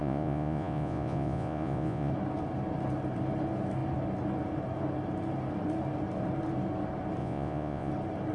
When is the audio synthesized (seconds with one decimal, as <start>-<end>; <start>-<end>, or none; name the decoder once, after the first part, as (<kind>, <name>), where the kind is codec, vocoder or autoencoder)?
0.0-2.1 (vocoder, Vocos); 7.2-7.9